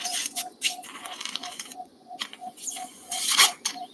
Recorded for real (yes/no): no